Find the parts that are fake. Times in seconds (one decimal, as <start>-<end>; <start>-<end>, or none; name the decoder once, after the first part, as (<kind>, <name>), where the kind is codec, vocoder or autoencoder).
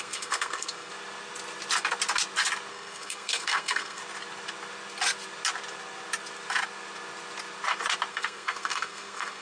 0.0-0.9 (codec, SNAC); 2.7-4.0; 8.1-9.4